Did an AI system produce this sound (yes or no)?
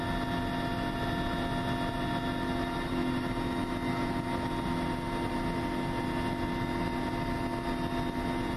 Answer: no